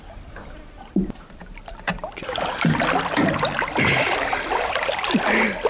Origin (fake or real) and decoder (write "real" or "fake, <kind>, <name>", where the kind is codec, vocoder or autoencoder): real